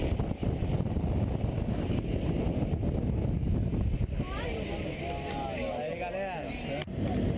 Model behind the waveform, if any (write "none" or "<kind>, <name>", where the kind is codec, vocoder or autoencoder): none